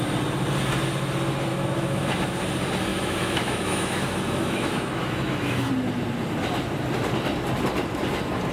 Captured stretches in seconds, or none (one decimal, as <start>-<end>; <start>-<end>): 0.0-1.5; 2.4-2.9; 5.7-8.5

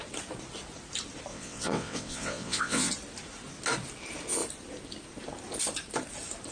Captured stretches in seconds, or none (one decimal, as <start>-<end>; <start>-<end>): 0.0-1.3; 2.9-6.5

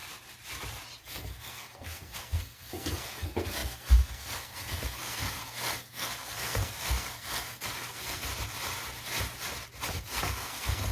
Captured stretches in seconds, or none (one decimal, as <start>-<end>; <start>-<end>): 0.0-1.0; 8.3-9.9

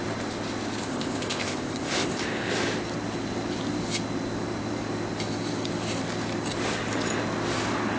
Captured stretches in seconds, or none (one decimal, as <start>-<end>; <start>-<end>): 0.0-0.8; 2.5-8.0

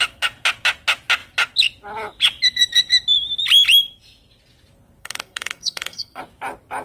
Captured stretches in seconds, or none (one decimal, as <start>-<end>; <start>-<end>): 0.0-5.0; 6.2-6.8

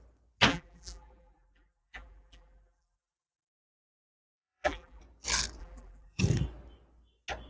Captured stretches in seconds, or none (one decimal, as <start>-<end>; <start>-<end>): 0.0-0.5; 5.0-5.6; 6.2-7.5